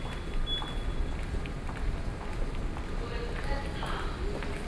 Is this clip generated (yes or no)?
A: no